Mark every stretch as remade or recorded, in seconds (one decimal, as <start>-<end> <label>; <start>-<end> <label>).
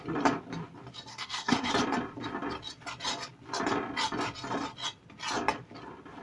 0.0-1.1 recorded; 1.1-1.7 remade; 1.7-6.2 recorded